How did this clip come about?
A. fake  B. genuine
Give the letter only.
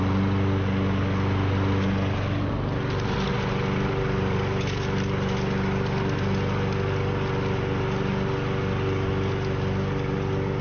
B